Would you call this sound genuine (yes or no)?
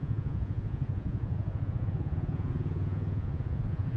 no